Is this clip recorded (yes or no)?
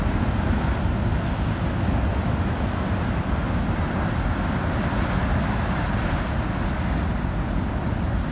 yes